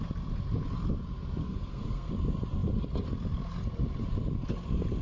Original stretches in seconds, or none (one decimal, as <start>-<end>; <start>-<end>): 0.0-1.4; 2.1-5.0